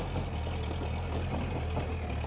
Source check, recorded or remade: recorded